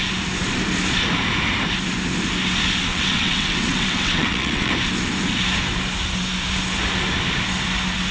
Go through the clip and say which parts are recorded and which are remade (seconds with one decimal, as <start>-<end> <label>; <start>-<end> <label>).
0.0-2.9 recorded; 2.9-4.7 remade; 4.7-8.1 recorded